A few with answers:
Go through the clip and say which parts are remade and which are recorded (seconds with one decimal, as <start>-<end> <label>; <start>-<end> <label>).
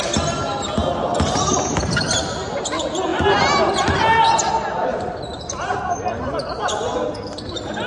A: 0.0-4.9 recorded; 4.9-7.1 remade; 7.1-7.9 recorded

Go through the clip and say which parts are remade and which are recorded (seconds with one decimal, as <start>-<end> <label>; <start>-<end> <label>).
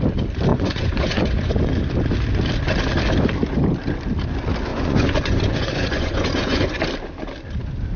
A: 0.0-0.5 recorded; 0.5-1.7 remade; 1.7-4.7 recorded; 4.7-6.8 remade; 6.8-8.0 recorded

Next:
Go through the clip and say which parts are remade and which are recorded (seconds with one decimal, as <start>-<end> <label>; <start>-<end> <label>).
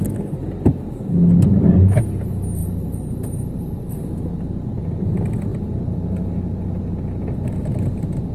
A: 0.0-2.6 recorded; 2.6-3.9 remade; 3.9-5.5 recorded; 5.5-7.6 remade; 7.6-8.3 recorded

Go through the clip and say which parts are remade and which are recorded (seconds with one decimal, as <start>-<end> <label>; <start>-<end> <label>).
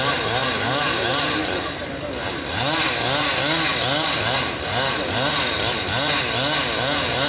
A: 0.0-3.7 recorded; 3.7-5.3 remade; 5.3-7.3 recorded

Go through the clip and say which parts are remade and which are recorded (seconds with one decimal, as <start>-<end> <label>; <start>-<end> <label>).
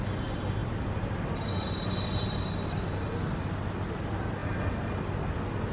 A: 0.0-5.7 recorded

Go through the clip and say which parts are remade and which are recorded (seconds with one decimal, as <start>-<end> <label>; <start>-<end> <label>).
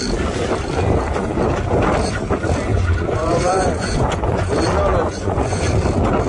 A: 0.0-2.7 recorded; 2.7-4.5 remade; 4.5-4.9 recorded; 4.9-5.6 remade; 5.6-6.3 recorded